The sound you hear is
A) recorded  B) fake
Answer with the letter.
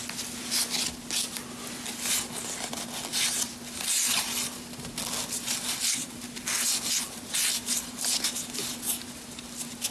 A